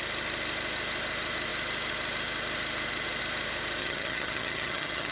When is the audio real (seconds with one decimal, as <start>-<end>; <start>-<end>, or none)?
0.0-3.8